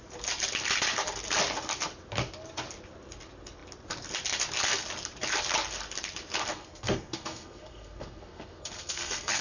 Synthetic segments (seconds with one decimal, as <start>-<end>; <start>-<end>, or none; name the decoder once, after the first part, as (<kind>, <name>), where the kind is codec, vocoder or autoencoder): 6.5-9.4 (codec, SNAC)